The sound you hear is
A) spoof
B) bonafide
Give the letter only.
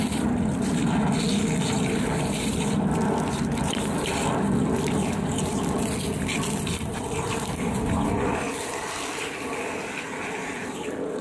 B